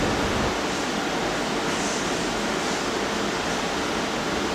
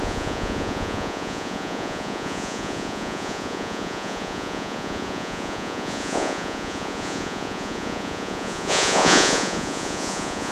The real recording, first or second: first